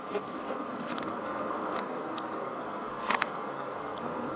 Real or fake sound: fake